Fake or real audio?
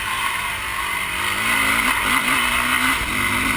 real